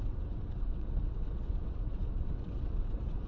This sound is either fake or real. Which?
fake